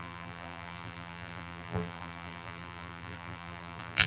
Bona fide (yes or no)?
no